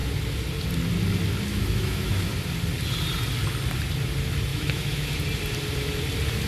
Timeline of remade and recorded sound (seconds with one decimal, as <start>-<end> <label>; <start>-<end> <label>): 0.0-1.5 recorded; 1.5-2.3 remade; 2.3-4.5 recorded; 4.5-5.1 remade; 5.1-6.5 recorded